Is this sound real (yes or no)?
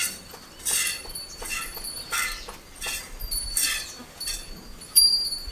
no